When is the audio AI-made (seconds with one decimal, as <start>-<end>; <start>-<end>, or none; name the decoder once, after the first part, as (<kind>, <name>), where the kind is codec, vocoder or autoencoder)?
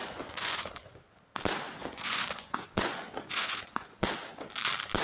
0.0-1.2 (vocoder, Vocos); 1.8-4.1